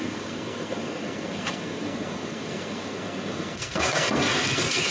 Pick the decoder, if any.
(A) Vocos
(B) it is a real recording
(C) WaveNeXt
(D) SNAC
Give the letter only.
D